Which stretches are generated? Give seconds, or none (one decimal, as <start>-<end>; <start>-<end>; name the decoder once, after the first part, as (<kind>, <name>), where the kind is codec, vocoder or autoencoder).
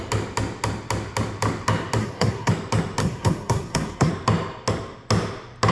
2.0-2.5 (codec, SNAC); 3.0-4.1